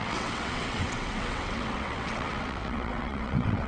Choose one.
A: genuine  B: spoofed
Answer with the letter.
B